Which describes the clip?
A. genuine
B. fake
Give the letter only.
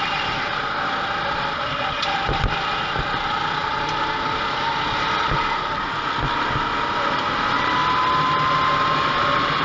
A